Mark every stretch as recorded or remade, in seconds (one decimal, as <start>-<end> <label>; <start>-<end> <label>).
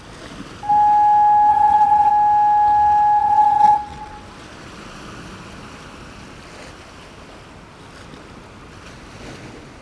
0.0-1.5 recorded; 1.5-2.1 remade; 2.1-3.2 recorded; 3.2-4.2 remade; 4.2-9.8 recorded